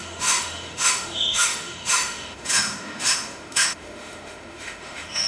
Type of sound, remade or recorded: remade